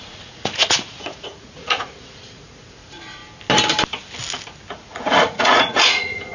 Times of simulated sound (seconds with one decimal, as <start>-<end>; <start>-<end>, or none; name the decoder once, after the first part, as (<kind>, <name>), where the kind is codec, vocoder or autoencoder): 0.0-3.2 (vocoder, Vocos); 4.7-6.3